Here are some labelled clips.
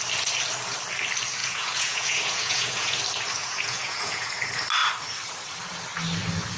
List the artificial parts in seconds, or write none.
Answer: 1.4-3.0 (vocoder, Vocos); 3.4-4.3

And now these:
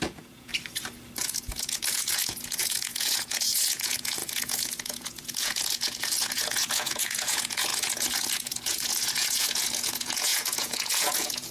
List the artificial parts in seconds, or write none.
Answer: 0.0-0.5 (vocoder, Vocos); 1.2-11.5